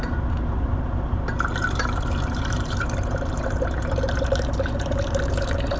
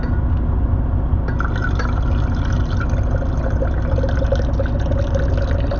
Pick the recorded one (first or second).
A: second